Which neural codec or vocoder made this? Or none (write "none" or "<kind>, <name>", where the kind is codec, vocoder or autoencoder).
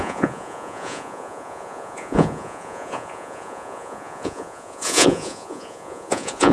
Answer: vocoder, Vocos